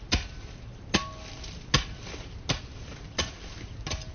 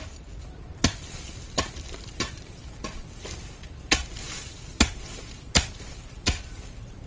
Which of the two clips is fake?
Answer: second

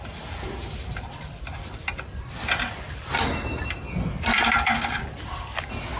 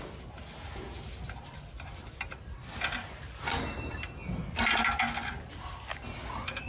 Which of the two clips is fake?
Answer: first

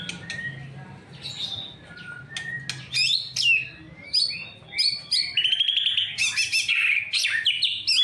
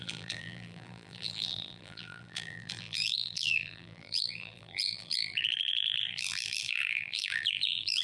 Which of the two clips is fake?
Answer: second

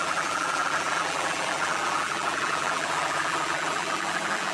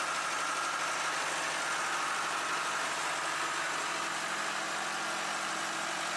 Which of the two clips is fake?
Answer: first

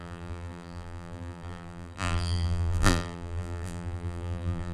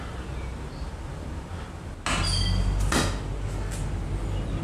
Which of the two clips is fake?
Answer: first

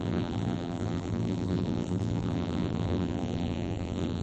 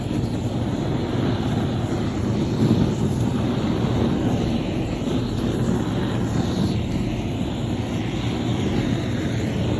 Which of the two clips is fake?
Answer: first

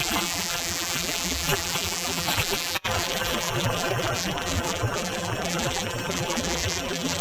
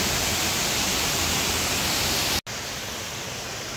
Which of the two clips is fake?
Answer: first